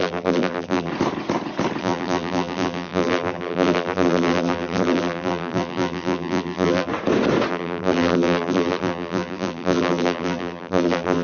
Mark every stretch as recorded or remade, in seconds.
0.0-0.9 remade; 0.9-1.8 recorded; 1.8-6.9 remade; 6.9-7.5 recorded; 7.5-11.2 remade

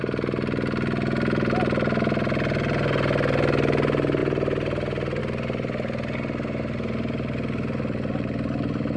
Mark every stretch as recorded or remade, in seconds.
0.0-9.0 recorded

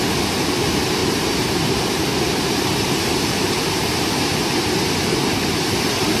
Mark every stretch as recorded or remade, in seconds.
0.0-1.0 recorded; 1.0-4.7 remade; 4.7-6.2 recorded